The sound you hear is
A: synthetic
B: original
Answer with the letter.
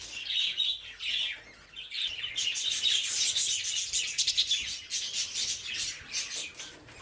B